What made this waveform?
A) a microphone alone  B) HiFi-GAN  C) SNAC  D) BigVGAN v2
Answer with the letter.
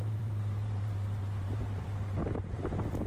D